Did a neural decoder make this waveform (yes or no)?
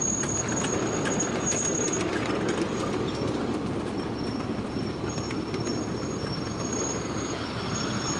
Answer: no